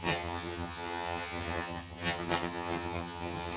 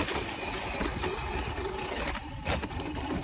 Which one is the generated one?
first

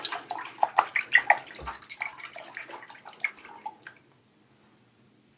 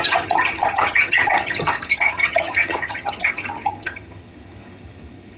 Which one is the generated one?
second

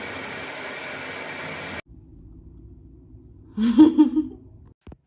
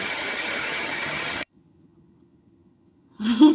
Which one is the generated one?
second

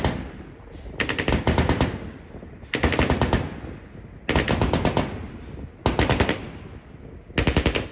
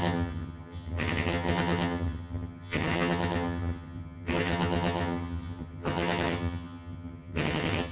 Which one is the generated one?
second